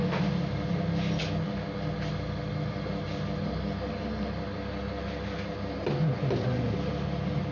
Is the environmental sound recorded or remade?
recorded